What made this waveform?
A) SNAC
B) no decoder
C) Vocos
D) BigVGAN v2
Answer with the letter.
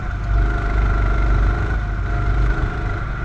B